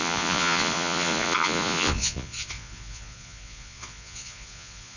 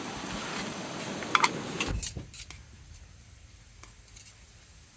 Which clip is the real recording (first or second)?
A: second